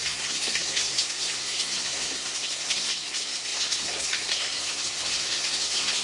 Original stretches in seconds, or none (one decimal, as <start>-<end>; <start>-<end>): none